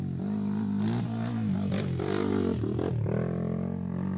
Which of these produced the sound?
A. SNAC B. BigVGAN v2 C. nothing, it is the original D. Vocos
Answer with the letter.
C